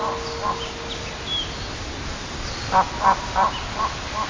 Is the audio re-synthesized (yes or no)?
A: no